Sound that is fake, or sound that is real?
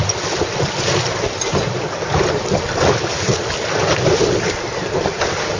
real